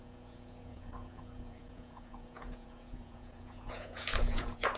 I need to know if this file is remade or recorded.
remade